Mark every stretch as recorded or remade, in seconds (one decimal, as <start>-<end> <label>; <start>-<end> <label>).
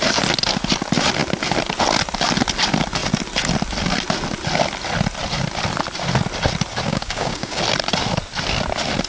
0.0-6.9 recorded; 6.9-7.6 remade; 7.6-9.1 recorded